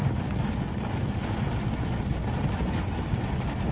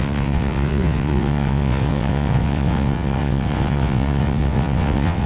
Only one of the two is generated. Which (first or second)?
second